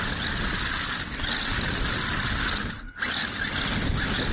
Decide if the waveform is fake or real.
real